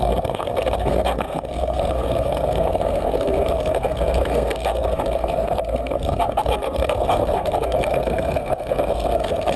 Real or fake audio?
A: fake